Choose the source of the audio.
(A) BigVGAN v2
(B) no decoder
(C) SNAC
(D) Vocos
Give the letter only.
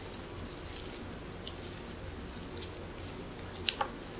B